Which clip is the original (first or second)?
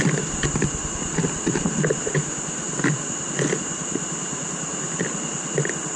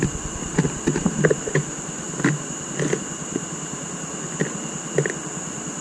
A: second